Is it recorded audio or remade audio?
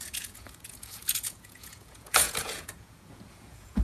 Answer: remade